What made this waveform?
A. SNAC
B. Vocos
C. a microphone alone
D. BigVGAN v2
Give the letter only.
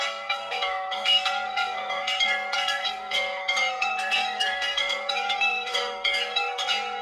A